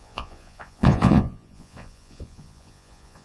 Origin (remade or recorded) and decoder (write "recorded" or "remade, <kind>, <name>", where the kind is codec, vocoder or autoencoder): remade, vocoder, Vocos